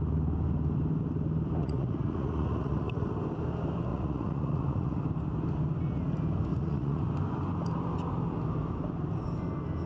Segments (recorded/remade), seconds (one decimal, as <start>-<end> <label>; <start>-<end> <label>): 0.0-1.6 recorded; 1.6-3.1 remade; 3.1-3.9 recorded; 3.9-5.0 remade; 5.0-6.5 recorded; 6.5-7.0 remade; 7.0-9.9 recorded